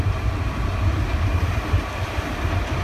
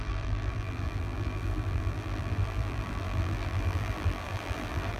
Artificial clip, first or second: second